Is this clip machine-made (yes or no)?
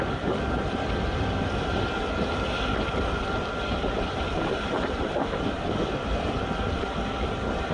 yes